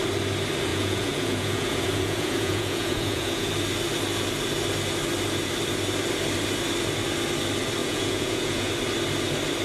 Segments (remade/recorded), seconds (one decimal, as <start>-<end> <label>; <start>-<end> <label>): 0.0-0.7 recorded; 0.7-3.5 remade; 3.5-7.8 recorded; 7.8-8.7 remade; 8.7-9.6 recorded